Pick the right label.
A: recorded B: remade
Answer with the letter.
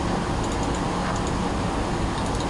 A